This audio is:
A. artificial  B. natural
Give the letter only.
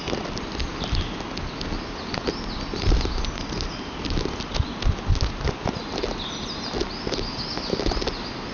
B